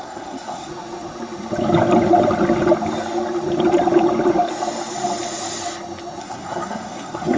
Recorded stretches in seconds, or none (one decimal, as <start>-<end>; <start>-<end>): 0.7-6.2